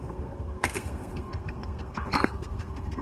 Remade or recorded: remade